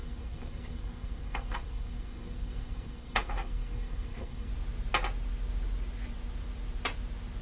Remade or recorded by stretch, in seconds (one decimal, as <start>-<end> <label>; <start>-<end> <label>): 0.0-4.5 remade; 4.5-7.4 recorded